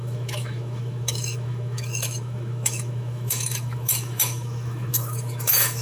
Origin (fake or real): fake